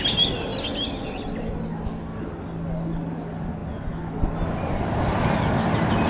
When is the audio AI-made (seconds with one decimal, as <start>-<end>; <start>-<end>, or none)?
none